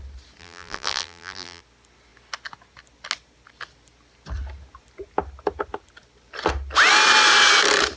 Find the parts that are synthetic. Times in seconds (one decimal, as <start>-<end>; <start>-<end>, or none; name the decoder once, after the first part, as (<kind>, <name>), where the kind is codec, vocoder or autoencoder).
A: 0.4-1.6 (vocoder, BigVGAN v2)